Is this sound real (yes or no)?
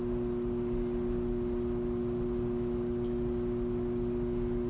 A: yes